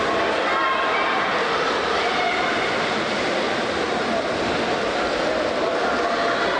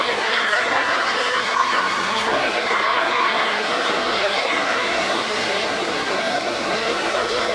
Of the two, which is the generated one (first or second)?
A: second